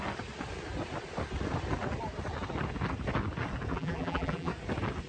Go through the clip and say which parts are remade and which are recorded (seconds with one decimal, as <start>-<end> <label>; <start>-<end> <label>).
0.0-3.7 recorded; 3.7-4.5 remade; 4.5-5.1 recorded